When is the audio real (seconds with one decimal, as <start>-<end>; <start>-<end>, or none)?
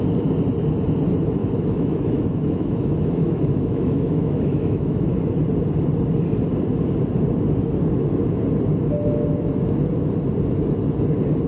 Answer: 0.0-1.4; 5.1-11.5